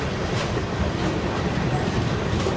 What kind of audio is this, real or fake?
fake